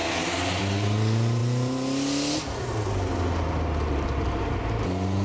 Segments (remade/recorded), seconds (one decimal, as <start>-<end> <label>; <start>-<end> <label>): 0.0-5.2 recorded